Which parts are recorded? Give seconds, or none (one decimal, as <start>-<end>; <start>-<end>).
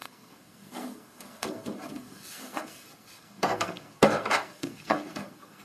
none